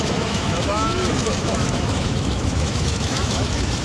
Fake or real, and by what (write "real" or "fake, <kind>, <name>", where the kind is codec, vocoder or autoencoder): fake, autoencoder, DAC-VAE